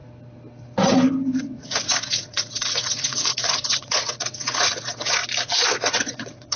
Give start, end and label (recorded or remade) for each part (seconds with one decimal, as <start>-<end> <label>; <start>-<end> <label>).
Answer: 0.0-1.4 recorded; 1.4-5.2 remade; 5.2-5.7 recorded; 5.7-6.6 remade